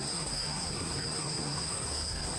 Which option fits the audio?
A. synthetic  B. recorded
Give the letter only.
A